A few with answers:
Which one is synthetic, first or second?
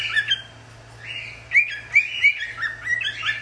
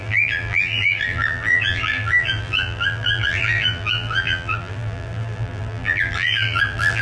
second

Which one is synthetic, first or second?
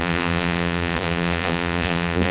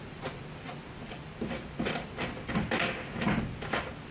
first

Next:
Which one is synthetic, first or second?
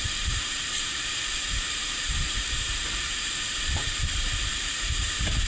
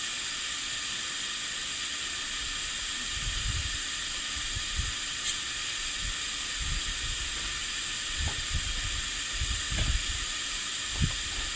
first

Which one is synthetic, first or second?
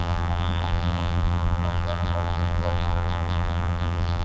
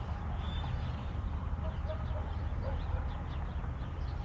first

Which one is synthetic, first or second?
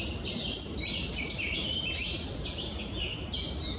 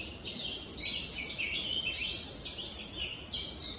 first